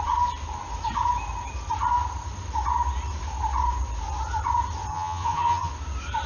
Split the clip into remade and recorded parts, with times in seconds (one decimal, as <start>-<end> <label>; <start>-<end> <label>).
0.0-4.9 recorded; 4.9-5.7 remade; 5.7-6.3 recorded